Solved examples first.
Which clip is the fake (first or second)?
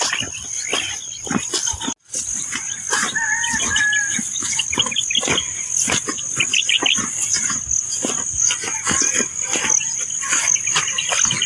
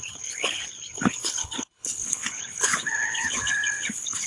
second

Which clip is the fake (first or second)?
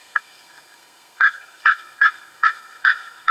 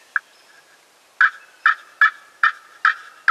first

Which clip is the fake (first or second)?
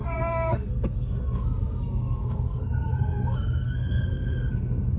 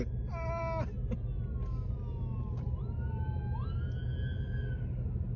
first